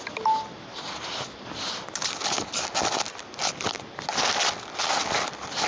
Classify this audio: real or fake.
real